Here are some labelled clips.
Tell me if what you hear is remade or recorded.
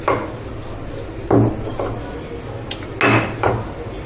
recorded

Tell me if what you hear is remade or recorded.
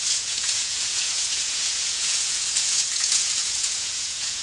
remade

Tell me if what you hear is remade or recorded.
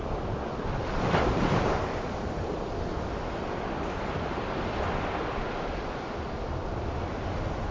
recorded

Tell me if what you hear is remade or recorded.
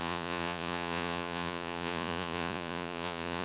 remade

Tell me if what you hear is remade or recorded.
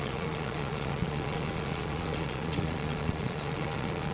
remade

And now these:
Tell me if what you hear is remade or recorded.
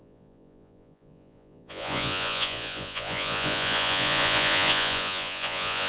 remade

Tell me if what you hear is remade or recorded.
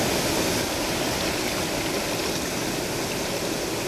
recorded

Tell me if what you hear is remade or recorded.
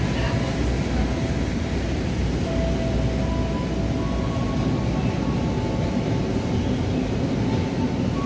recorded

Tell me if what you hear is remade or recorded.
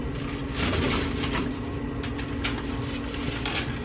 recorded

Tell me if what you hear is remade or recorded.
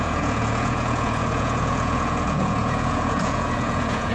remade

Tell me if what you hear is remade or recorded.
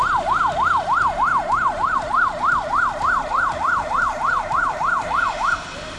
recorded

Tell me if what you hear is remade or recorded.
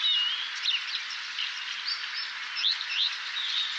recorded